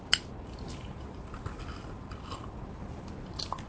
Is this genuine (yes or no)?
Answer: yes